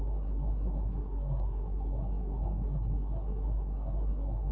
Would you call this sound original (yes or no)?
no